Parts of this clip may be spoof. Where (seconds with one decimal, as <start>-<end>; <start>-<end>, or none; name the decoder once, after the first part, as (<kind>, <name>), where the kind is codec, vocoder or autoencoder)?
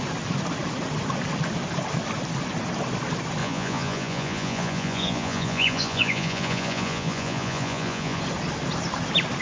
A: 3.4-8.2 (vocoder, Vocos)